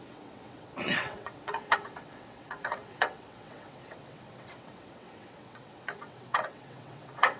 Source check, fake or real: fake